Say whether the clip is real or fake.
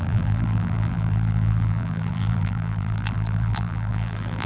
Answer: fake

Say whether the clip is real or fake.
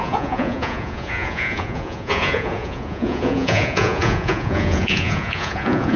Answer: fake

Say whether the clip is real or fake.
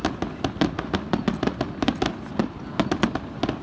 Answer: real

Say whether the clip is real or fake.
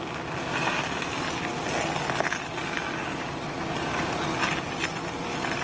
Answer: real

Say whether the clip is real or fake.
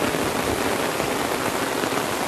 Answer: real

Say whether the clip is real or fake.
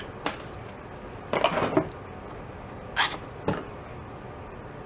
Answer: real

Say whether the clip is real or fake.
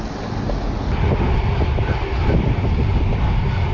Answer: real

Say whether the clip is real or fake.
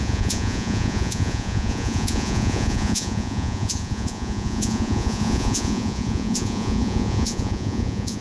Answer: fake